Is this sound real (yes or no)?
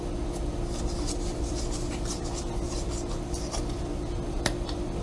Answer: yes